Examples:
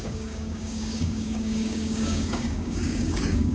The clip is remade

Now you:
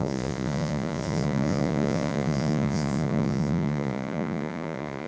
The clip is remade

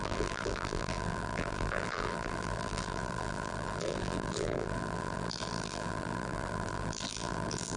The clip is remade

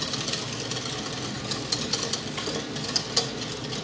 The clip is recorded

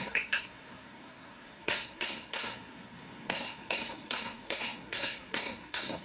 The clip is remade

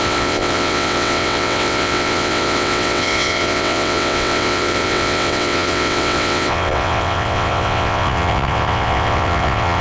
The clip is remade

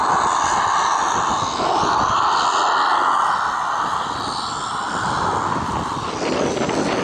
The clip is recorded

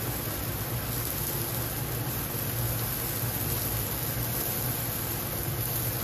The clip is recorded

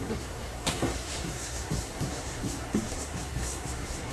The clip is remade